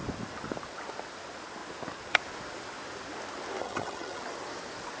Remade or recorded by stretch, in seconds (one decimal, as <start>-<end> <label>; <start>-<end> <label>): 0.0-3.6 recorded; 3.6-4.2 remade; 4.2-5.0 recorded